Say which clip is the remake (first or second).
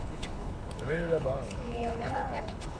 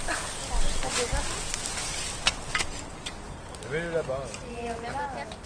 first